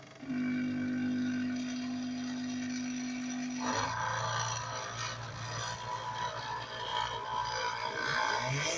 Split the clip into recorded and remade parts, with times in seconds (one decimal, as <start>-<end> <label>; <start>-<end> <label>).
0.0-8.8 recorded